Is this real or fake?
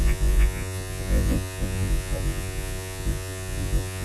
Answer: fake